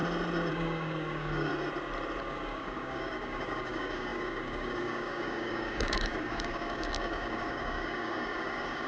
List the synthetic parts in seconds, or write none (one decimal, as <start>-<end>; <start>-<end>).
0.5-1.5; 2.2-8.9